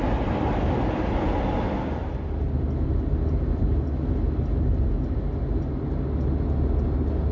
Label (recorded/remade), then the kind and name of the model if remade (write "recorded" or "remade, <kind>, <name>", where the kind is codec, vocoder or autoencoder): recorded